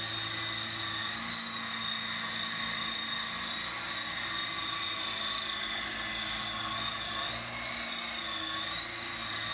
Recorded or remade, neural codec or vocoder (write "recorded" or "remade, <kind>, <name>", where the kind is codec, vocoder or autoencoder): recorded